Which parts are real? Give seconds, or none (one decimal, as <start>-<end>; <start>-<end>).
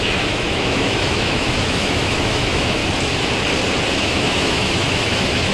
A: 2.8-3.9